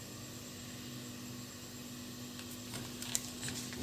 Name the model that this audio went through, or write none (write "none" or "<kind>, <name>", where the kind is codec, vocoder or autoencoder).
none